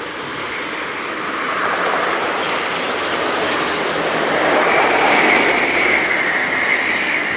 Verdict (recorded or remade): recorded